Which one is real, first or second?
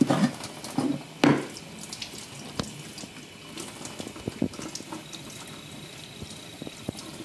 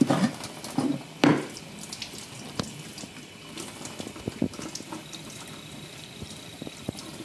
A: first